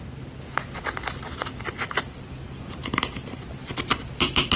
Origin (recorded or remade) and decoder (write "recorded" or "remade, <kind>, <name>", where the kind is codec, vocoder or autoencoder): recorded